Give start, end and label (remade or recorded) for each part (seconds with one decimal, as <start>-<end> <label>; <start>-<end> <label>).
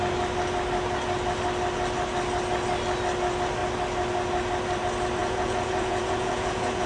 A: 0.0-5.2 recorded; 5.2-6.9 remade